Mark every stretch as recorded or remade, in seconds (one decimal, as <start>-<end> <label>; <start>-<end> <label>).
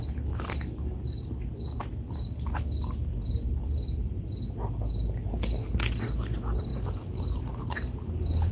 0.0-8.5 recorded